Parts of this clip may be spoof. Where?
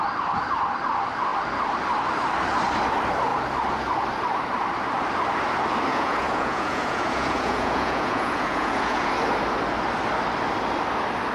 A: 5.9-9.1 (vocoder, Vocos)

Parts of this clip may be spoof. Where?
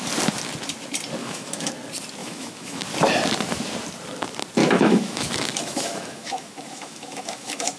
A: 1.2-1.7 (autoencoder, DAC-VAE); 2.2-2.8; 4.6-7.8